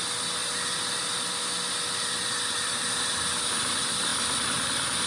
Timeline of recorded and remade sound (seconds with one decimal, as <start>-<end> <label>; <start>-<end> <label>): 0.0-5.1 recorded